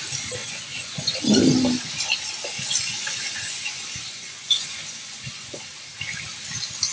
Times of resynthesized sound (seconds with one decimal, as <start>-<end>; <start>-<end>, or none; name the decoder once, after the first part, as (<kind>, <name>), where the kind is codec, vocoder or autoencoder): 0.4-1.2 (vocoder, Vocos); 2.9-5.7